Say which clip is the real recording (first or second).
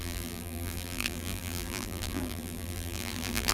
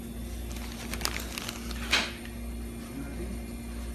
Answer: second